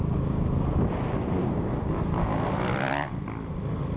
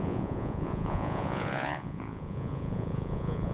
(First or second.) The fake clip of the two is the second